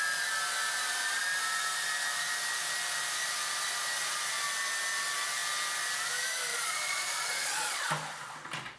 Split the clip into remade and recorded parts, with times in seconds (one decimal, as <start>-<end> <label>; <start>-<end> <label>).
0.0-6.5 recorded; 6.5-7.9 remade; 7.9-8.8 recorded